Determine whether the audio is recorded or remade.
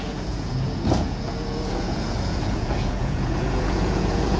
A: remade